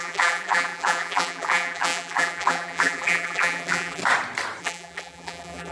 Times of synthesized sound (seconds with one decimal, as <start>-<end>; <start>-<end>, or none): 0.0-4.0; 4.6-5.7

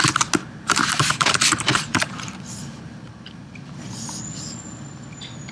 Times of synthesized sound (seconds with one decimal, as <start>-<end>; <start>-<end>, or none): 0.4-3.7

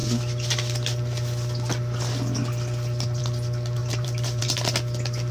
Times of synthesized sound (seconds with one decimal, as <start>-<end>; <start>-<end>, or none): 3.8-4.4

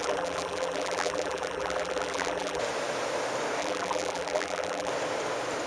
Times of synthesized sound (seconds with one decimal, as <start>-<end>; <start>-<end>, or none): 0.0-2.6; 3.6-4.9

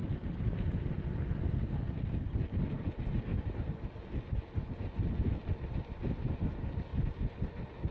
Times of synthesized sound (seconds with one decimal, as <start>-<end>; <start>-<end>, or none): 0.5-3.3; 5.5-7.9